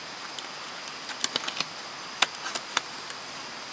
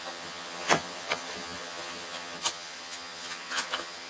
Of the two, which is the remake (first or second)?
second